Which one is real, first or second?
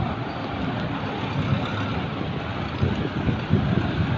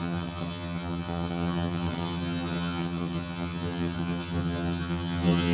first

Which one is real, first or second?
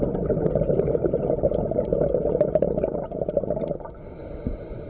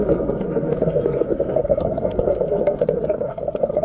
first